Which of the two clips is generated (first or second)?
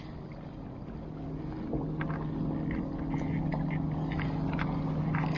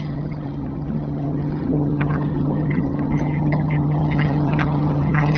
second